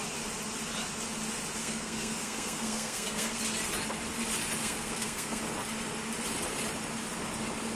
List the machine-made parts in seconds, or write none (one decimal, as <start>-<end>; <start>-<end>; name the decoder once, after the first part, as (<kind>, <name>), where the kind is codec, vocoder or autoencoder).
1.6-3.4 (codec, SNAC); 4.6-5.4